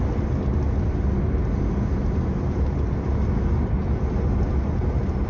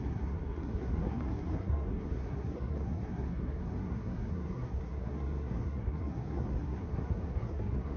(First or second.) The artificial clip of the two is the second